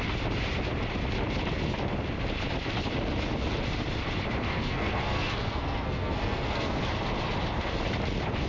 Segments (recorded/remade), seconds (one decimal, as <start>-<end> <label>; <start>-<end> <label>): 0.0-4.5 recorded; 4.5-6.8 remade; 6.8-8.5 recorded